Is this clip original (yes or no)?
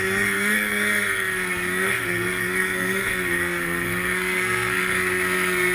no